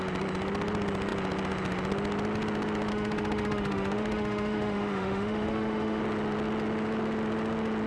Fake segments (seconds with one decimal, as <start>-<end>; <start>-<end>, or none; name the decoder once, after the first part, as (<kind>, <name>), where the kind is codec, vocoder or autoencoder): 2.9-6.0 (autoencoder, DAC-VAE)